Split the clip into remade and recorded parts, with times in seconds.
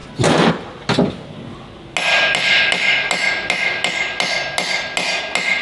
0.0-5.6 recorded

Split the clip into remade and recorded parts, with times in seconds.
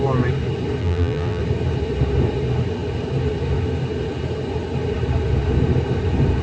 0.0-0.8 recorded; 0.8-1.4 remade; 1.4-6.4 recorded